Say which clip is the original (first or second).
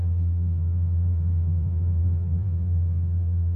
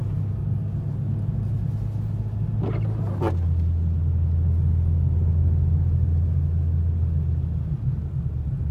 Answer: second